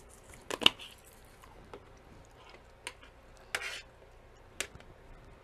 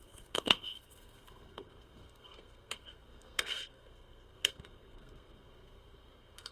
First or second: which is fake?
second